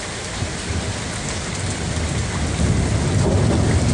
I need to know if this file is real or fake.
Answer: real